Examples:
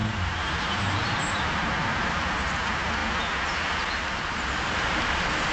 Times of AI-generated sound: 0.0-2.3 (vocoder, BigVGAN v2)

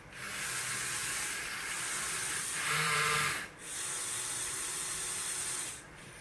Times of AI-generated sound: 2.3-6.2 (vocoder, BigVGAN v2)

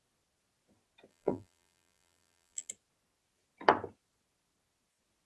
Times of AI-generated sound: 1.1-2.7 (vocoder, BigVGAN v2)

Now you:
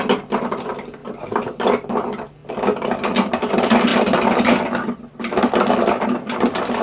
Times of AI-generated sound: 1.0-1.5 (vocoder, BigVGAN v2); 2.4-3.5

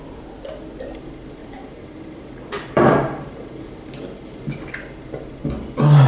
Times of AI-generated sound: 1.4-3.7 (vocoder, BigVGAN v2)